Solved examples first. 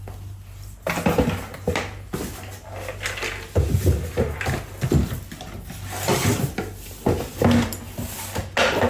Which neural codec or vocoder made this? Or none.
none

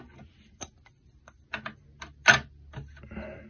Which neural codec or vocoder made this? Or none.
none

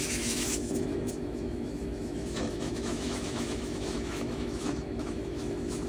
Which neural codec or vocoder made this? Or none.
autoencoder, DAC-VAE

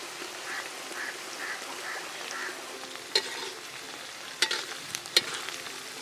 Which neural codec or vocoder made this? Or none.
none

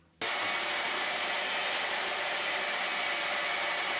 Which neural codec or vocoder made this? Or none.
none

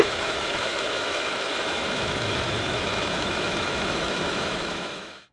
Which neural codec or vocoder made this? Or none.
autoencoder, DAC-VAE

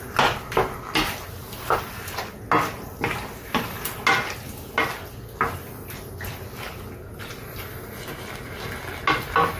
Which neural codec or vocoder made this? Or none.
none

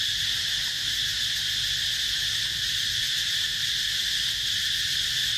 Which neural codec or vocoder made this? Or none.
none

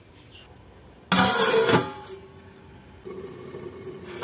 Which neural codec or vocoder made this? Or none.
none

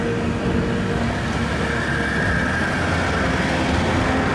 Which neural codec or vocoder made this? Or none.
none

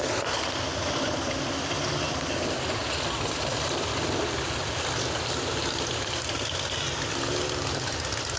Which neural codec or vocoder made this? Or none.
none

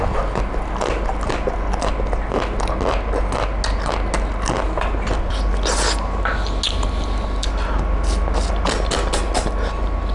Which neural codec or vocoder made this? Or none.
none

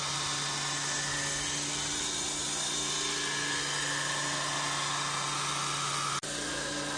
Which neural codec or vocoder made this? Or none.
none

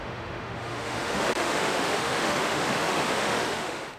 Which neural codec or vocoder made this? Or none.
autoencoder, DAC-VAE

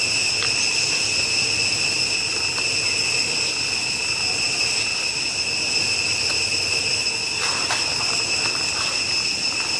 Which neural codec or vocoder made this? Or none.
none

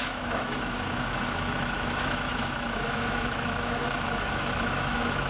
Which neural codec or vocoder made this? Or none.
autoencoder, DAC-VAE